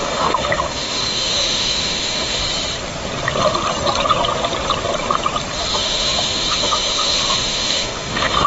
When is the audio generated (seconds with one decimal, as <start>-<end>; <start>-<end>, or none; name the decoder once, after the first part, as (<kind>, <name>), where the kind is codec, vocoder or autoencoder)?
0.0-2.4 (autoencoder, DAC-VAE); 5.8-8.5